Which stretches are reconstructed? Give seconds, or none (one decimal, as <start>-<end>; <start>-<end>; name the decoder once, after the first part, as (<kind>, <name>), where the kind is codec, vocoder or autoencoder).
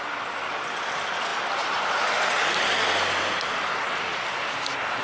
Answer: none